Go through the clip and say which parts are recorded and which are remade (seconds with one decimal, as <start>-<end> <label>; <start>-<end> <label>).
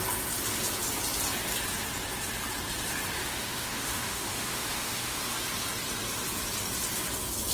0.0-3.2 recorded; 3.2-5.2 remade; 5.2-7.5 recorded